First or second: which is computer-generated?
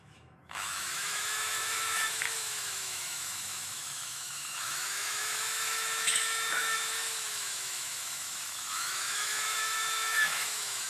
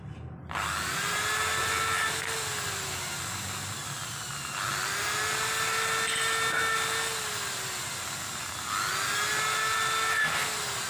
first